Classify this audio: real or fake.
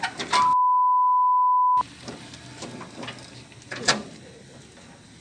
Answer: real